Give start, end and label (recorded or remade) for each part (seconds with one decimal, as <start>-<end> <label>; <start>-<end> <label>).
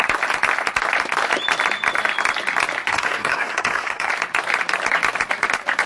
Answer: 0.0-2.9 recorded; 2.9-4.1 remade; 4.1-5.9 recorded